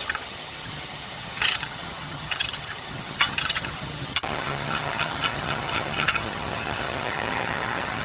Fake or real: fake